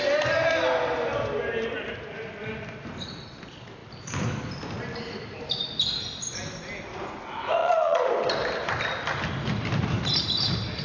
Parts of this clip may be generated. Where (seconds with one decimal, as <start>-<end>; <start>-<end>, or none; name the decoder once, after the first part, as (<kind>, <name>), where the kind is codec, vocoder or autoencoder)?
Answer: 7.6-8.1 (vocoder, Vocos)